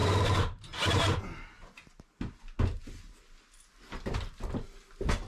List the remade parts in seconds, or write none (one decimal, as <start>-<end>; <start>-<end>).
none